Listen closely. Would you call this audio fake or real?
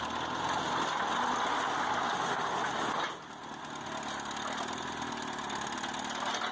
real